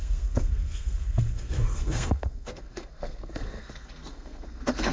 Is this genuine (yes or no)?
no